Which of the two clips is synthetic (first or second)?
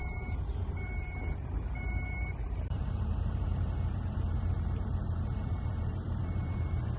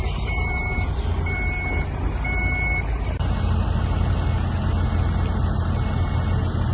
first